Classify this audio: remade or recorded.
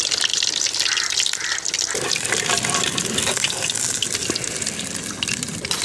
recorded